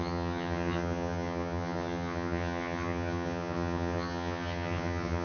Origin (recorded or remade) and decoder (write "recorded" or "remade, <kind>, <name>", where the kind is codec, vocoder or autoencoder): remade, vocoder, HiFi-GAN